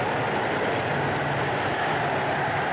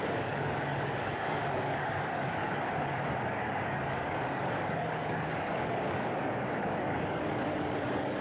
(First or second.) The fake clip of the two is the second